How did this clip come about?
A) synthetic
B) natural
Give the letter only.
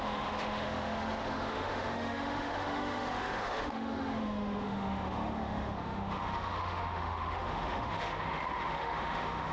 A